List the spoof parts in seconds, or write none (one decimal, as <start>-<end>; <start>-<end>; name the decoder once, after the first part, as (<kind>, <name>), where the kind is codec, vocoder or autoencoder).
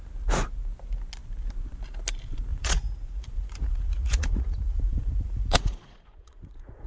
2.5-6.9 (vocoder, Vocos)